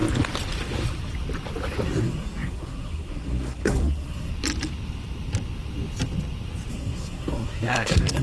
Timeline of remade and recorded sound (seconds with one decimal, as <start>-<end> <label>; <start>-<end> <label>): 0.0-2.0 recorded; 2.0-4.3 remade; 4.3-6.7 recorded; 6.7-8.2 remade